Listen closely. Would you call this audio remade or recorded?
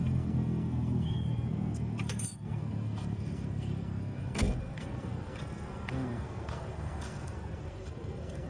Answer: remade